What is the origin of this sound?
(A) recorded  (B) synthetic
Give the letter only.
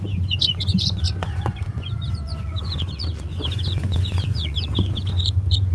B